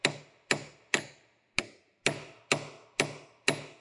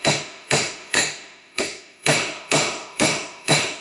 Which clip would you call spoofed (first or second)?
second